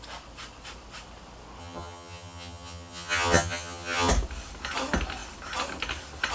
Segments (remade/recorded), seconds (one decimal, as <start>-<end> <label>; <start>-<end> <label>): 0.0-1.6 recorded; 1.6-4.1 remade; 4.1-6.3 recorded